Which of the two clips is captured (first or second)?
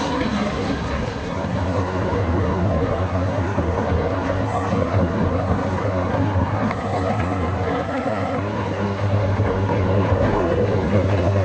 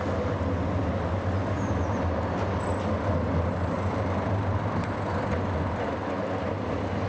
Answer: second